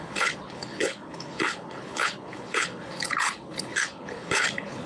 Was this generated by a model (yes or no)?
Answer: yes